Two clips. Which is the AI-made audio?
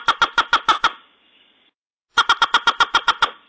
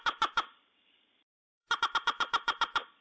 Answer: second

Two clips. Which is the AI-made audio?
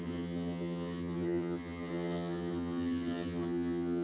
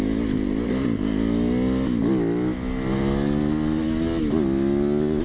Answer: first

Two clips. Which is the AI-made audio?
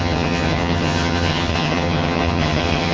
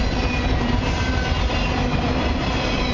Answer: first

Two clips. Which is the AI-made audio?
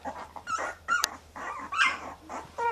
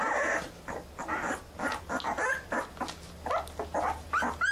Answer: first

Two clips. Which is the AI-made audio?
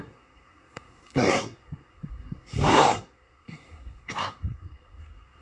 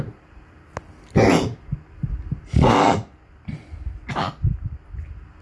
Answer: first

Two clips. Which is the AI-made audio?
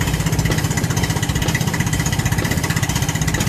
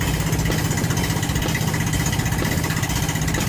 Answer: first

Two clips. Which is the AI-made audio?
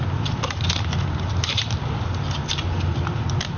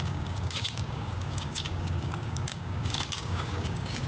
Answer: second